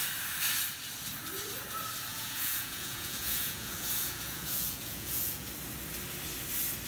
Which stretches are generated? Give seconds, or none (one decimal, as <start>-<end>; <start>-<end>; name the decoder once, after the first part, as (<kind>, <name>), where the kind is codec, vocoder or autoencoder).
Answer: 2.1-5.5 (vocoder, Vocos)